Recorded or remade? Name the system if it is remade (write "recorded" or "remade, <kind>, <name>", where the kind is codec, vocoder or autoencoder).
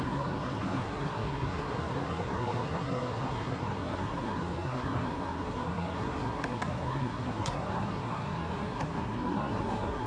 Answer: remade, codec, SNAC